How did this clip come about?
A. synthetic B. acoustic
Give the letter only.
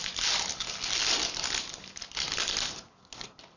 B